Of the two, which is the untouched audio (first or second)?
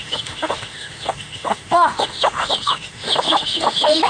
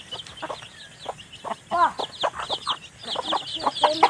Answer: second